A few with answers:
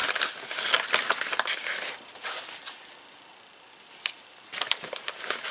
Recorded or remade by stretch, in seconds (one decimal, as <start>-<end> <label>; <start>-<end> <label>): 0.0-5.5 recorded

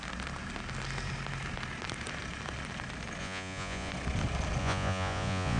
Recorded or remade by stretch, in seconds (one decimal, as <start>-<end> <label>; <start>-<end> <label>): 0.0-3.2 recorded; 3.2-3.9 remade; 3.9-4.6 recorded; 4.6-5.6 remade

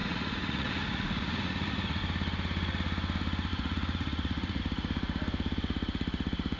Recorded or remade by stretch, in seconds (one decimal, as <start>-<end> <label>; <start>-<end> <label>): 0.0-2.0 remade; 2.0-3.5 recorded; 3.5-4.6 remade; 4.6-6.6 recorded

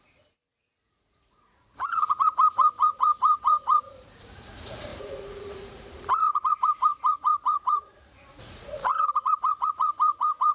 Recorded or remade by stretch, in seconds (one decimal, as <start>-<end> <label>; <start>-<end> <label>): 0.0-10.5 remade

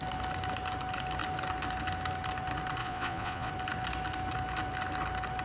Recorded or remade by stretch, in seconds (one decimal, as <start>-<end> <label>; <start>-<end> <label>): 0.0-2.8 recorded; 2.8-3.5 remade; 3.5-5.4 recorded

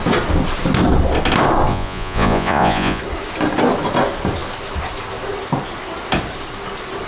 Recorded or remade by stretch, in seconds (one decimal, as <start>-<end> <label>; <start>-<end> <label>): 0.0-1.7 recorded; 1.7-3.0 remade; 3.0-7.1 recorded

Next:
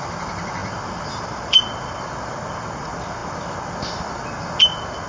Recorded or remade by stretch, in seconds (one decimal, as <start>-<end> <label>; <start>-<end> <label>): 0.0-5.1 recorded

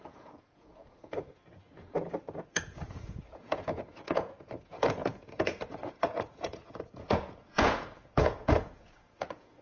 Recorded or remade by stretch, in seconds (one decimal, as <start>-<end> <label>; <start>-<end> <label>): 0.0-9.6 remade